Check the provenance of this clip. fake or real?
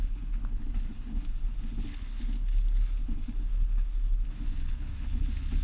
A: fake